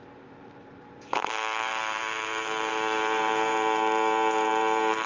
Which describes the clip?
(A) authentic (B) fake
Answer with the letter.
B